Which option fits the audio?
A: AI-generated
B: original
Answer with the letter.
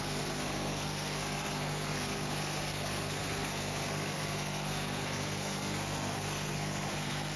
A